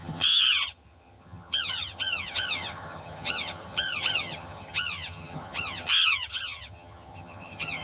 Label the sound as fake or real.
fake